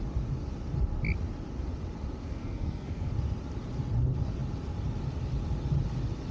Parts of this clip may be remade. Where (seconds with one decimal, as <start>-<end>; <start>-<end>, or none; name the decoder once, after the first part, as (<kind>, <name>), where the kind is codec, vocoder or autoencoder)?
2.2-3.1 (codec, SNAC)